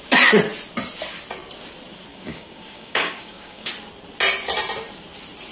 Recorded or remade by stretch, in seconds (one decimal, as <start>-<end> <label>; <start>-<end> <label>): 0.0-2.1 recorded; 2.1-3.7 remade; 3.7-5.5 recorded

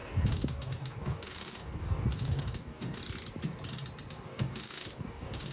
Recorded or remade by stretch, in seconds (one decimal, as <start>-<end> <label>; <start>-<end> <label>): 0.0-3.0 remade; 3.0-4.1 recorded; 4.1-5.5 remade

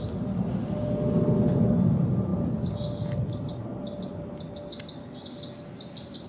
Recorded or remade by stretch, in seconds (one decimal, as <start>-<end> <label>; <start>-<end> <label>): 0.0-6.3 recorded

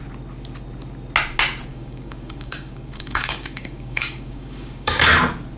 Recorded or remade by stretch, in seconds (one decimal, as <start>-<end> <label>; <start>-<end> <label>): 0.0-1.7 recorded; 1.7-5.1 remade; 5.1-5.6 recorded

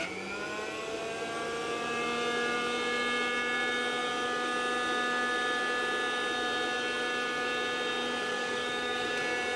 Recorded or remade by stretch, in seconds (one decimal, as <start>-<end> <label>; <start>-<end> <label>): 0.0-8.3 recorded; 8.3-9.1 remade; 9.1-9.6 recorded